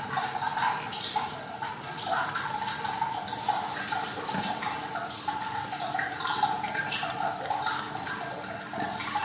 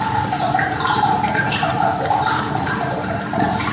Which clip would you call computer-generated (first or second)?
second